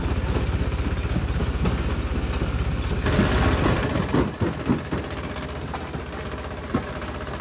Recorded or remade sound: recorded